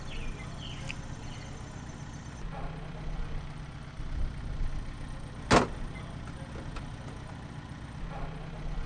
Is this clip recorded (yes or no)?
yes